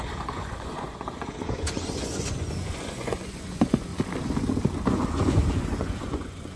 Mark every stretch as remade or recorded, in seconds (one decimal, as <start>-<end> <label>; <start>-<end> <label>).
0.0-3.9 remade; 3.9-4.9 recorded; 4.9-6.6 remade